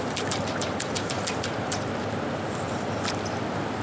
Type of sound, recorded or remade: remade